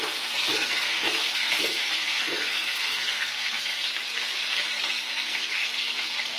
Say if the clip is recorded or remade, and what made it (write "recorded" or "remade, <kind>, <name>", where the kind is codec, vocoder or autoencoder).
remade, codec, SNAC